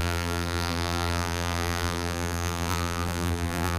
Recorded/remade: remade